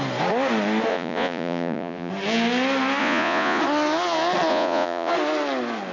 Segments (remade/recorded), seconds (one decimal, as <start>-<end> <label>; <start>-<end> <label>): 0.0-0.9 recorded; 0.9-2.1 remade; 2.1-3.0 recorded; 3.0-3.6 remade; 3.6-4.5 recorded; 4.5-5.1 remade; 5.1-5.9 recorded